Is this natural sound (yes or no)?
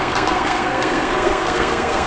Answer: no